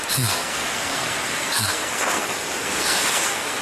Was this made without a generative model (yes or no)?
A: no